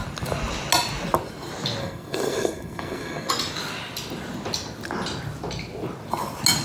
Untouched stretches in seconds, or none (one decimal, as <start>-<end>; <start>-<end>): 0.0-1.8; 3.3-6.6